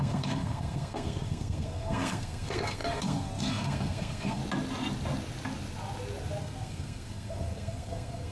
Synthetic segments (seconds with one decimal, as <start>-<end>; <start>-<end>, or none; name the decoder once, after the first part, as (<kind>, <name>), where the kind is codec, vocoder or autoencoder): 0.0-4.4 (codec, SNAC); 6.4-8.3